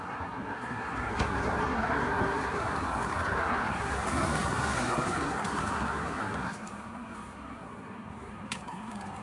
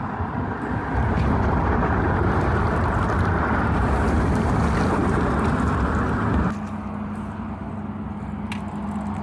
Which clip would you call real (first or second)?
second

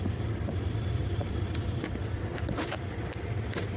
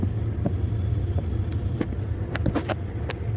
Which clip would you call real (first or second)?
second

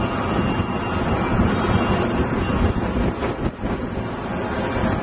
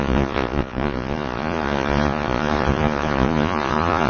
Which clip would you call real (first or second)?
first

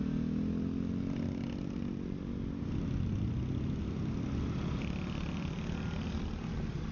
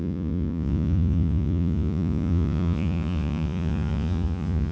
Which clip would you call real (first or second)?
first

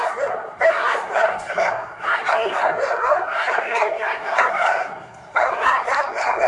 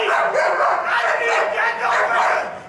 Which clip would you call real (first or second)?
second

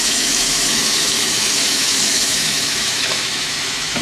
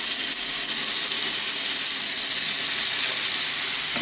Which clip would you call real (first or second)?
second